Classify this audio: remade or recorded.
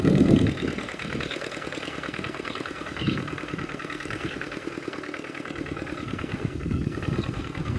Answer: remade